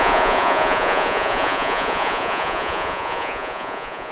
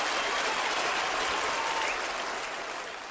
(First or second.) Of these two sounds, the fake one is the first